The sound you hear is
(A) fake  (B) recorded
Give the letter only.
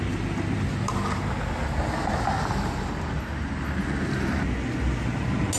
B